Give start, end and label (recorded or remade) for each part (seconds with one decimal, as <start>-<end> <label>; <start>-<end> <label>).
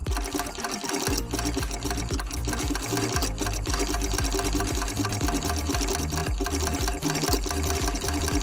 0.0-8.4 recorded